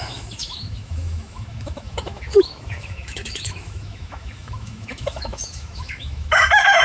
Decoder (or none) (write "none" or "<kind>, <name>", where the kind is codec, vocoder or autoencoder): autoencoder, DAC-VAE